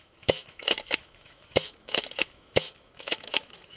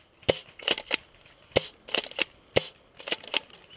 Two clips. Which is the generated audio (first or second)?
first